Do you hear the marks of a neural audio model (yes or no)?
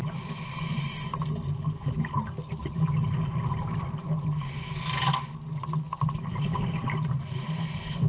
no